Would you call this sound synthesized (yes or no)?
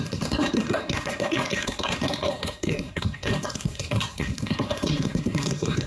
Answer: yes